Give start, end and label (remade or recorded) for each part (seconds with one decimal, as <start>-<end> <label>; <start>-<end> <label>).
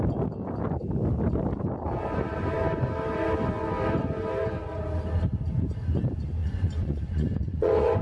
0.0-6.4 recorded; 6.4-8.0 remade